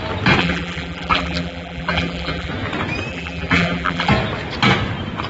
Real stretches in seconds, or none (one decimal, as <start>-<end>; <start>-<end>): 0.0-0.4; 2.5-3.1; 4.1-5.3